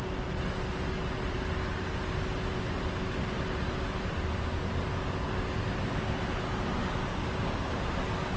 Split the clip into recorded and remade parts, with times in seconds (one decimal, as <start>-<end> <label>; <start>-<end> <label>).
0.0-7.1 recorded; 7.1-7.8 remade; 7.8-8.4 recorded